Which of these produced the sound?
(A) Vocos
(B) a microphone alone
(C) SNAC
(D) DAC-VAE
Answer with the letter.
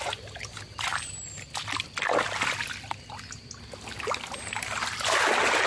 B